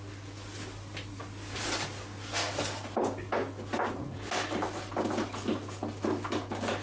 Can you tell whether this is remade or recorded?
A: recorded